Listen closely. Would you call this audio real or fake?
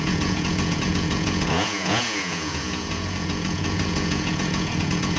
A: fake